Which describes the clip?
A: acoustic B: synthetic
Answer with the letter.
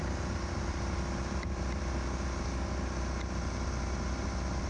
A